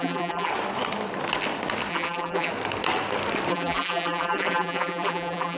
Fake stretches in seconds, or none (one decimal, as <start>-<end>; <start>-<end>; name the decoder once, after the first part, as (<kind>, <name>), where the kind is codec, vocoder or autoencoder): 0.0-0.5 (vocoder, BigVGAN v2); 1.9-2.5; 3.5-5.6